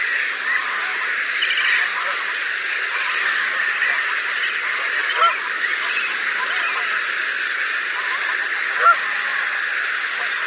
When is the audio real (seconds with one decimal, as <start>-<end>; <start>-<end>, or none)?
0.0-10.5